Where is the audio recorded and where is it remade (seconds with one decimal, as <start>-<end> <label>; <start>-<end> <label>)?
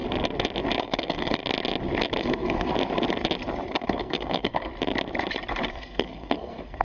0.0-0.8 recorded; 0.8-1.4 remade; 1.4-2.2 recorded; 2.2-2.7 remade; 2.7-3.7 recorded; 3.7-4.7 remade; 4.7-5.7 recorded; 5.7-6.8 remade